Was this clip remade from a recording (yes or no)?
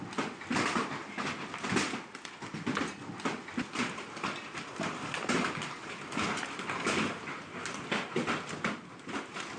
no